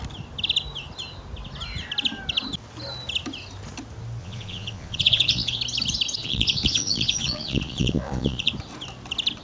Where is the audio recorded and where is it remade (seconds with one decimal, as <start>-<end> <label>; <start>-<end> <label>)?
0.0-4.2 recorded; 4.2-5.6 remade; 5.6-6.2 recorded; 6.2-8.5 remade; 8.5-9.4 recorded